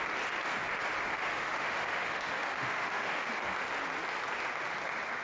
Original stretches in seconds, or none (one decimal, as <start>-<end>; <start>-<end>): 0.0-1.1; 3.3-5.2